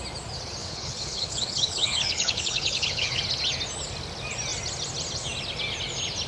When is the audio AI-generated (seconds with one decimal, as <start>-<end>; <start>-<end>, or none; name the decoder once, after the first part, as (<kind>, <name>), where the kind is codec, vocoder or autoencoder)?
0.6-3.2 (codec, HILCodec)